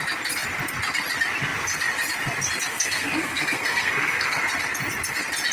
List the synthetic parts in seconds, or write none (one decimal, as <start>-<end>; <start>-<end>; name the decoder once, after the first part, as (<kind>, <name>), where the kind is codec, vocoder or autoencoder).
2.7-4.4 (codec, SNAC)